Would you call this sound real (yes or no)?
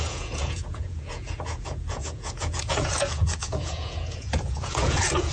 no